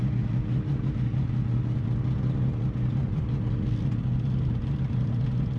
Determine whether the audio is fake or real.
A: real